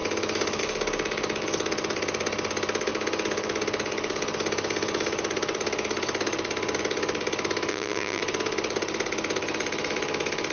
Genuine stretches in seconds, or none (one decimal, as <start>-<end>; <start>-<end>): 0.0-7.7; 8.2-10.5